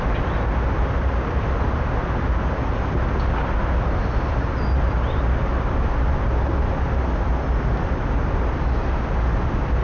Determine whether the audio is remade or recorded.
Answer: recorded